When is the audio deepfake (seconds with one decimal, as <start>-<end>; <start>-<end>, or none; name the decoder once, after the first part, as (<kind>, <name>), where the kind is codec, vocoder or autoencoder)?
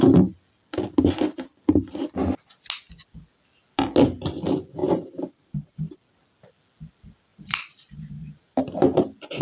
4.8-6.0 (vocoder, BigVGAN v2); 7.3-8.8